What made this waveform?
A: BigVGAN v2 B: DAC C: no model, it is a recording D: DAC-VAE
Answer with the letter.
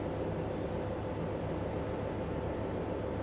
C